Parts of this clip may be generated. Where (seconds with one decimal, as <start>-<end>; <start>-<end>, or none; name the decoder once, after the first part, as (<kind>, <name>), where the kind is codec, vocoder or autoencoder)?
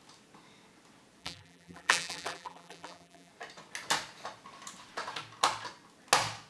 1.2-3.3 (vocoder, BigVGAN v2)